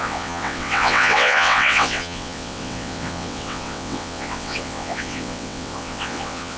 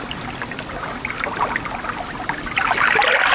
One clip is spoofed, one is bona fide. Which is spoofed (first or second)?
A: first